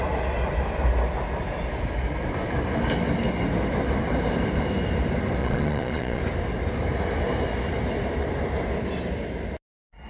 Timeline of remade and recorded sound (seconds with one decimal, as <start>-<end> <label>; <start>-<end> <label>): 0.0-5.4 recorded; 5.4-6.2 remade; 6.2-10.1 recorded